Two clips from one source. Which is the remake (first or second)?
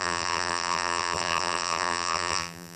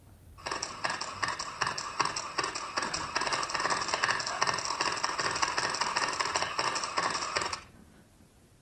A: first